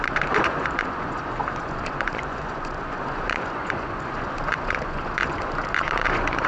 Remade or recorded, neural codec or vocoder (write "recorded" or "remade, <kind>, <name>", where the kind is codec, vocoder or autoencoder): remade, vocoder, Vocos